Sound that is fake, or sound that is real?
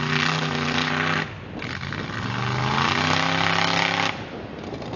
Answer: real